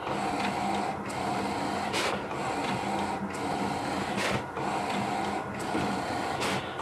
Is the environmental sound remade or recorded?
recorded